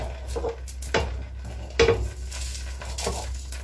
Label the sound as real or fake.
real